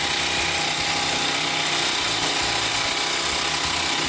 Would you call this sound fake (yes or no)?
no